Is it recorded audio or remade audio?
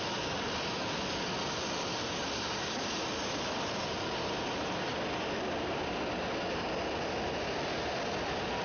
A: recorded